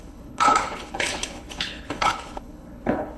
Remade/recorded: remade